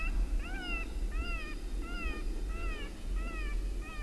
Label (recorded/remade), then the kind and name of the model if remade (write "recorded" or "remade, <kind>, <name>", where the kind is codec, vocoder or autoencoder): recorded